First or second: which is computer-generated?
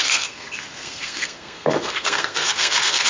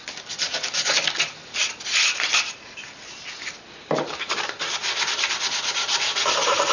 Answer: first